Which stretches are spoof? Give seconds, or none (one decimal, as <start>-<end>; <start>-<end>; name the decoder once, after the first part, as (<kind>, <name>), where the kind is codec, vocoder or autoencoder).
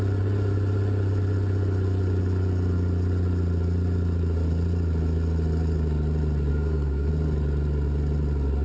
6.5-7.1 (codec, SNAC)